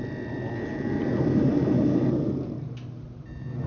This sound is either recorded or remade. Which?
recorded